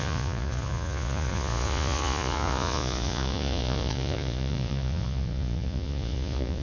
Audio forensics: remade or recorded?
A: remade